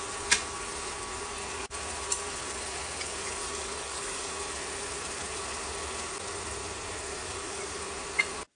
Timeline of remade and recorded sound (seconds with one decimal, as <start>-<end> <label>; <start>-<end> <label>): 0.0-3.4 recorded; 3.4-4.3 remade; 4.3-7.2 recorded; 7.2-7.8 remade; 7.8-8.6 recorded